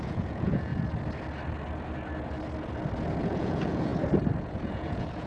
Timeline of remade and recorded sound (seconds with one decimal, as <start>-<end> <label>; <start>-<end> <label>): 0.0-0.7 remade; 0.7-3.2 recorded; 3.2-3.9 remade; 3.9-4.4 recorded; 4.4-5.3 remade